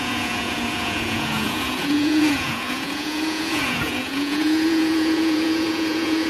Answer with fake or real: fake